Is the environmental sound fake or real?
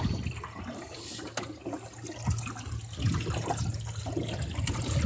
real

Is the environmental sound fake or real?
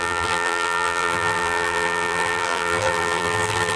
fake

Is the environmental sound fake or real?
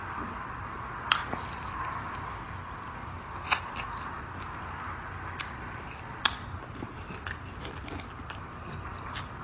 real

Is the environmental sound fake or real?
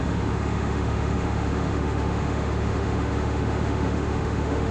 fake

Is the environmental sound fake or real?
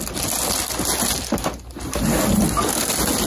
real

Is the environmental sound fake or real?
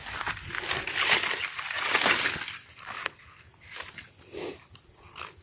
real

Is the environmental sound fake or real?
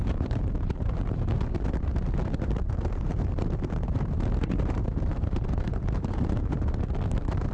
fake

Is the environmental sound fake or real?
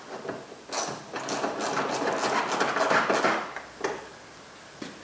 real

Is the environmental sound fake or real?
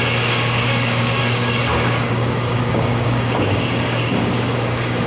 fake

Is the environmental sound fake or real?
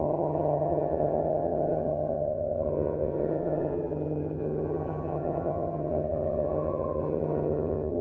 fake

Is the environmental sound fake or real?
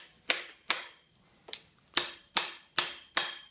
real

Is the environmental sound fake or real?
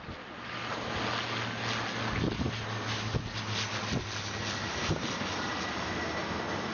real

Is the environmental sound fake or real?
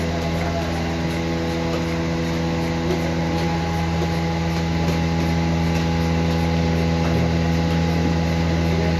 real